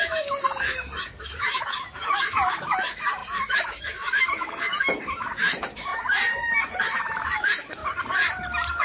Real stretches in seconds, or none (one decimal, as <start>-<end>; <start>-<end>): 5.9-6.8; 7.8-8.8